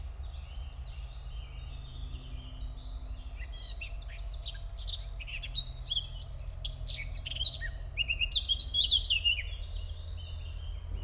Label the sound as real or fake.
real